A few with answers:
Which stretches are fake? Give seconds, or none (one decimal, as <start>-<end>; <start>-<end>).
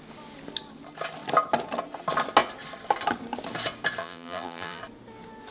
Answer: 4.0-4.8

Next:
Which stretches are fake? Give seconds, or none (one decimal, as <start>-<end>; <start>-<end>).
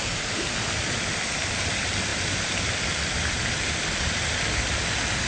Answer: none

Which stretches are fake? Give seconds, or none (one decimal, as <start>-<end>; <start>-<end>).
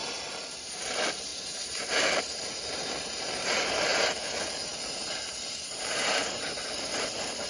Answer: 0.5-7.5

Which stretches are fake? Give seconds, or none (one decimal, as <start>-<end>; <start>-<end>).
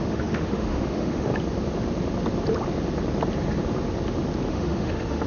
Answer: 0.0-1.3; 4.5-5.3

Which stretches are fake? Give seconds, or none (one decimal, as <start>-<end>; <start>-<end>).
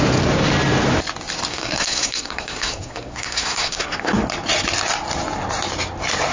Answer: 1.5-4.2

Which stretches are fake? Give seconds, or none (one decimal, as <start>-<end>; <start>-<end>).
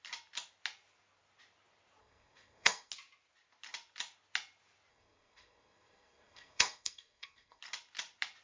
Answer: 2.0-2.9; 4.9-7.6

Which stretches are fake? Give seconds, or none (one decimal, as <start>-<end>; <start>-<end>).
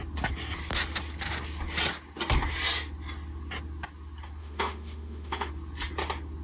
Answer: 4.4-5.5